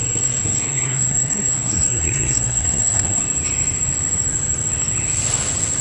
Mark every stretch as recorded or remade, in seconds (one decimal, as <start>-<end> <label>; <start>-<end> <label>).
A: 0.0-3.2 remade; 3.2-5.8 recorded